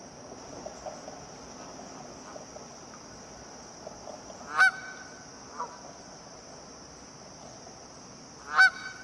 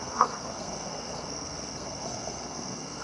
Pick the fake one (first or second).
second